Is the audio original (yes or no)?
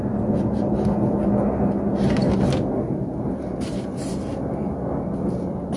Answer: yes